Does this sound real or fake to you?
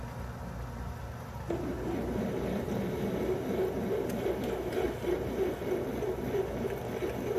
real